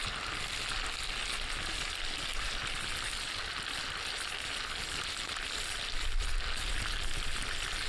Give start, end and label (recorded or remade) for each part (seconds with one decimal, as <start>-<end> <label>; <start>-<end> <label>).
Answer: 0.0-7.9 recorded